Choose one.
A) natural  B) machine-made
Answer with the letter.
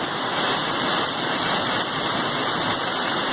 A